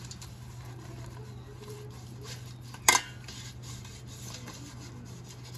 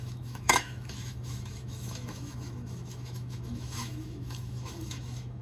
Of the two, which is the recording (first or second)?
first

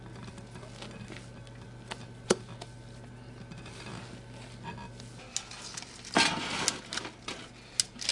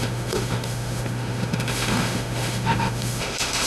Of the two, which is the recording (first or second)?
first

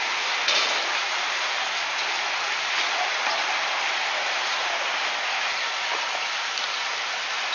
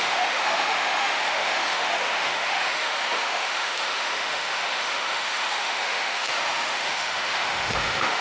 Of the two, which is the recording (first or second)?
first